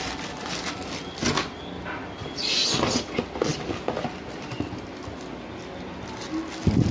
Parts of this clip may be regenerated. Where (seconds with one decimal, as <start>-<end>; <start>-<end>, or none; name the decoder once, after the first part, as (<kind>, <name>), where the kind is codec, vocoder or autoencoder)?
none